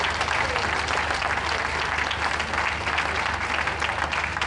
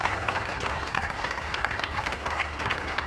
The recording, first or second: first